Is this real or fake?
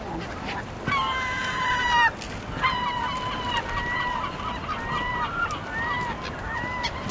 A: real